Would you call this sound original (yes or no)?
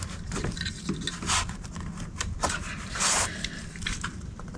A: yes